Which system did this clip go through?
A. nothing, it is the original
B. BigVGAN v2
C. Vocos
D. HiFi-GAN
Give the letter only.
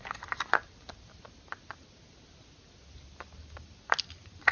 A